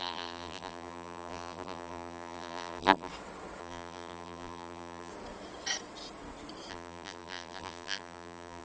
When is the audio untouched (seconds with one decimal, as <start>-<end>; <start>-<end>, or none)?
3.1-3.6; 5.1-6.7